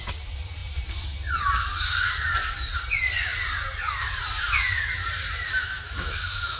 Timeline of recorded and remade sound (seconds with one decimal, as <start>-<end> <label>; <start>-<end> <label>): 0.0-5.6 recorded; 5.6-6.6 remade